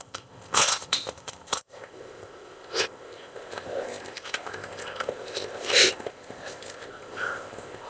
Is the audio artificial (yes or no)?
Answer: yes